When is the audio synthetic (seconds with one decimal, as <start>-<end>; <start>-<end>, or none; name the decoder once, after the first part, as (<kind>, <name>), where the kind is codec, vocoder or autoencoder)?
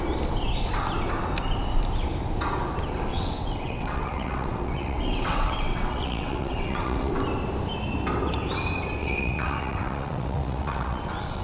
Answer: 3.1-7.1 (vocoder, WaveNeXt); 9.0-11.4